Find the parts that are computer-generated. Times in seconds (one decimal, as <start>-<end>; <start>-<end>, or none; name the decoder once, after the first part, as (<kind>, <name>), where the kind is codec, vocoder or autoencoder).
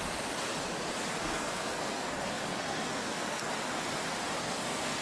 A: 1.2-3.5 (codec, SNAC); 4.4-5.0